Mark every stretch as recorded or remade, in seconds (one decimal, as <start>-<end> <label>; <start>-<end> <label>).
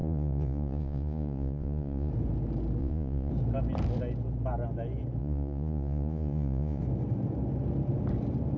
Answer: 0.0-2.1 remade; 2.1-2.8 recorded; 2.8-3.3 remade; 3.3-5.2 recorded; 5.2-6.8 remade; 6.8-8.6 recorded